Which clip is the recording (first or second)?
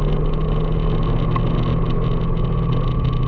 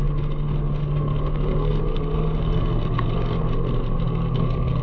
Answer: first